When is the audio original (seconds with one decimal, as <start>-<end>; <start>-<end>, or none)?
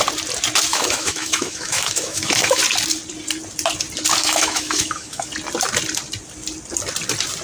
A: 0.0-0.7; 2.6-4.2; 5.3-7.4